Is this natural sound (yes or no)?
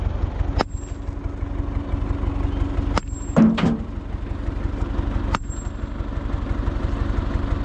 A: yes